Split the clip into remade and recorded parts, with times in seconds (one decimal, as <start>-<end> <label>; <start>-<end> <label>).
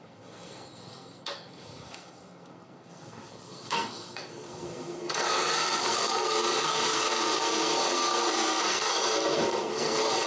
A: 0.0-10.3 remade